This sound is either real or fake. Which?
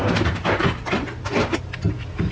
real